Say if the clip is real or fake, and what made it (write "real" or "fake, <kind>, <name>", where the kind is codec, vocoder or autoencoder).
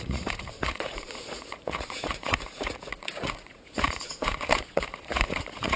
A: fake, vocoder, Vocos